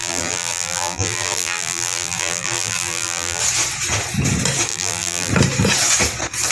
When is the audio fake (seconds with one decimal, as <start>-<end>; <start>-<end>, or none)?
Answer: 0.0-3.4; 4.7-5.3